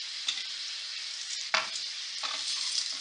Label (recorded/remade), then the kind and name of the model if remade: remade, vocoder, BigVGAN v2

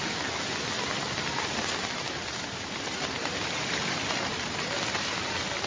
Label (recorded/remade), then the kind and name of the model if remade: remade, vocoder, BigVGAN v2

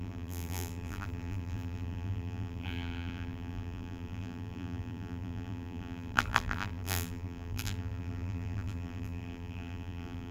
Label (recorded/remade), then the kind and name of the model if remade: remade, vocoder, BigVGAN v2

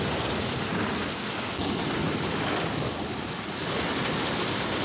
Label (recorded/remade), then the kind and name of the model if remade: recorded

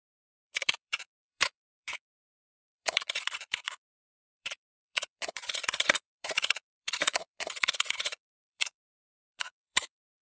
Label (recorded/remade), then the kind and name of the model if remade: remade, vocoder, Vocos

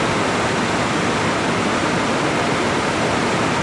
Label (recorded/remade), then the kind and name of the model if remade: recorded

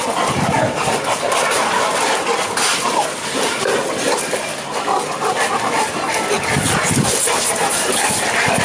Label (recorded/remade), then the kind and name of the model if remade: recorded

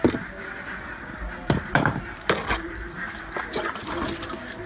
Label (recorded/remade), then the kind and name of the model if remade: recorded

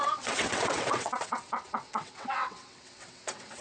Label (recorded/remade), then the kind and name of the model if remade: remade, vocoder, WaveNeXt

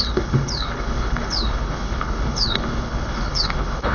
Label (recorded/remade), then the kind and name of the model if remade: remade, codec, HILCodec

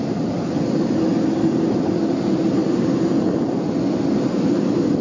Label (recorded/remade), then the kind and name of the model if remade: recorded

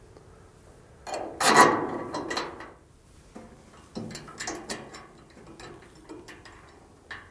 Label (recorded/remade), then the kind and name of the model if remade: recorded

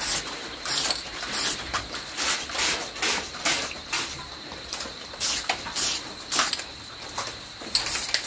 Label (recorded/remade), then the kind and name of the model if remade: recorded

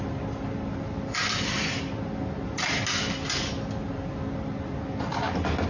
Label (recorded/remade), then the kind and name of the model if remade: recorded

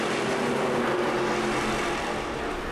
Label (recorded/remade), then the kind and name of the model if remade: recorded